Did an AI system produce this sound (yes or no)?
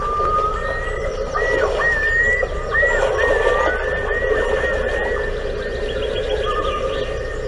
no